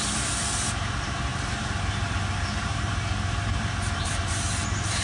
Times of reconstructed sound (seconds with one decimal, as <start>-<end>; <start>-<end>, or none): 0.0-5.0